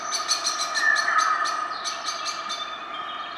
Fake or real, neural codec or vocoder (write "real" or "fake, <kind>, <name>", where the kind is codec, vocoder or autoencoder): real